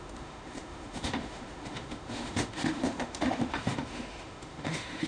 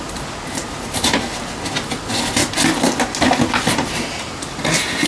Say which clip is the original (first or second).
second